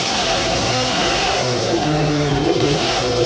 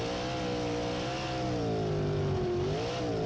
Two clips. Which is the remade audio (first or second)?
first